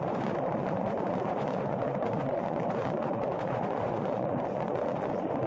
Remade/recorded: remade